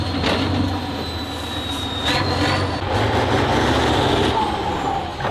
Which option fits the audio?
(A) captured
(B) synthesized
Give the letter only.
A